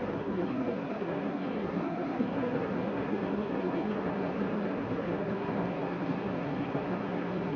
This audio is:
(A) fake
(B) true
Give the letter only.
A